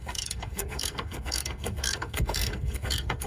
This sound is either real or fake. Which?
fake